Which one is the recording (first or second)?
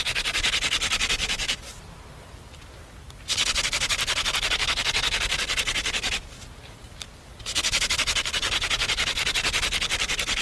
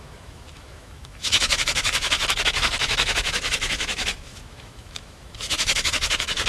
first